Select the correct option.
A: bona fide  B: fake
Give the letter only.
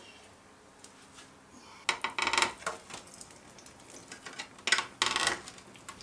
A